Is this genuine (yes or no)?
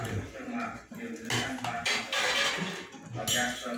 yes